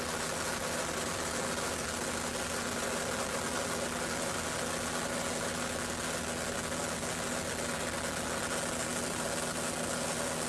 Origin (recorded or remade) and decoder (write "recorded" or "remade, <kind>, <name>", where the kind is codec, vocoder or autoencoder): recorded